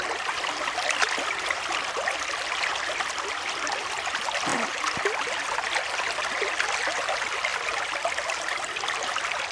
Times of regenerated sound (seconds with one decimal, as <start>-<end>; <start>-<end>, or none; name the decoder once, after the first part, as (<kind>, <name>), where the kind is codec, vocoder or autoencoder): none